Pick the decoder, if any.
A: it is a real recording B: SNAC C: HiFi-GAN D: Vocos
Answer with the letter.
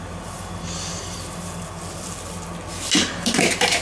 A